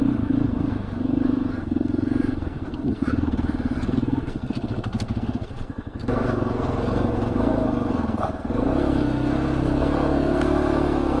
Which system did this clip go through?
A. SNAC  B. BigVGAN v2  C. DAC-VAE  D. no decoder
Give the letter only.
A